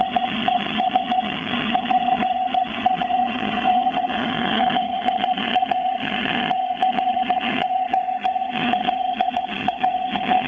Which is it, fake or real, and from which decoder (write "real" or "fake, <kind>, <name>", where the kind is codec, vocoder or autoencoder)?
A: fake, vocoder, HiFi-GAN